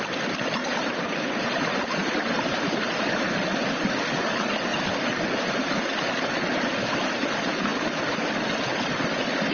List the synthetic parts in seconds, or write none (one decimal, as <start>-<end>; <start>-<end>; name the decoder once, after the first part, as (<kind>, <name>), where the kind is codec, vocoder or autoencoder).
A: 0.6-2.4 (vocoder, BigVGAN v2)